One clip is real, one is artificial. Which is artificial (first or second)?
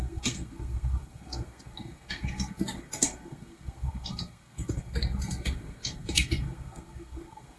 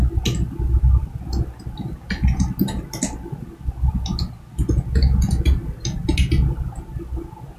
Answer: first